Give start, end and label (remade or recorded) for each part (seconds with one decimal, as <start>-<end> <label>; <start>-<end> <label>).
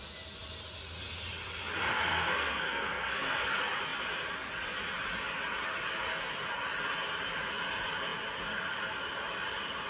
0.0-1.9 recorded; 1.9-3.5 remade; 3.5-9.9 recorded